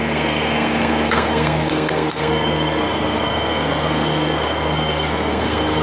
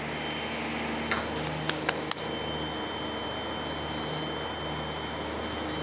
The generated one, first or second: first